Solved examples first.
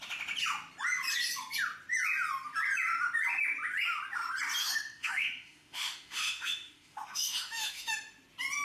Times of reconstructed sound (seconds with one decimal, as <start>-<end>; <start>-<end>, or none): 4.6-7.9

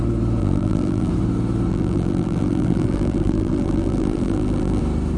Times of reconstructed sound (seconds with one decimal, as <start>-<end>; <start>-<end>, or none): 0.4-1.1; 1.7-4.8

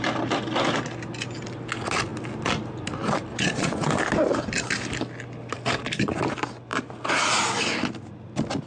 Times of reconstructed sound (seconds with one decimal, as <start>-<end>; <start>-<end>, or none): 3.3-3.9